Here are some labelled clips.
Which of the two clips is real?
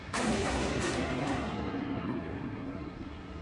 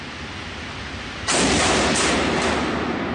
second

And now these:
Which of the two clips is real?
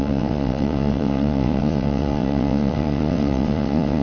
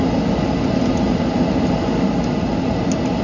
second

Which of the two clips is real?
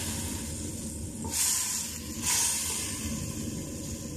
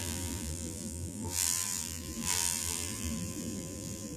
first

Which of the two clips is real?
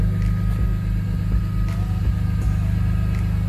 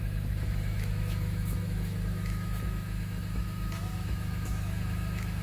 first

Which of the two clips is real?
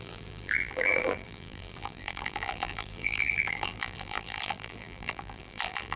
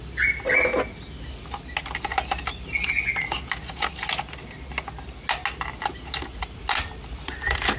second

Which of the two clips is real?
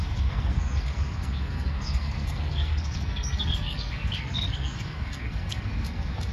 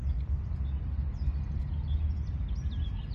second